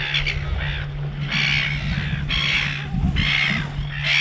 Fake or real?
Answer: real